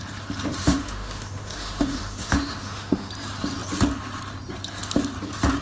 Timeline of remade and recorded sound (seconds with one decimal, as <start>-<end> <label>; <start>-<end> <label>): 0.0-0.6 recorded; 0.6-3.1 remade; 3.1-5.6 recorded